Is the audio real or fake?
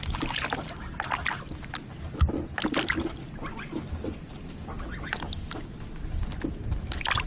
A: real